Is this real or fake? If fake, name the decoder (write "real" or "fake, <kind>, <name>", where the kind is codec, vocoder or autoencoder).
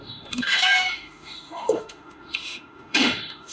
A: fake, autoencoder, DAC-VAE